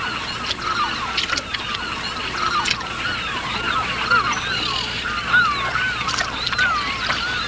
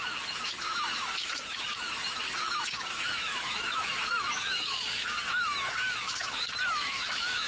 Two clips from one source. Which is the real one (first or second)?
first